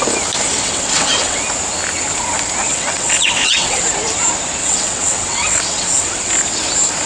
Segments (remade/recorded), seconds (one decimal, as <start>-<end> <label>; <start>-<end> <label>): 0.0-0.5 recorded; 0.5-1.4 remade; 1.4-2.7 recorded; 2.7-3.8 remade; 3.8-4.6 recorded; 4.6-6.3 remade; 6.3-7.1 recorded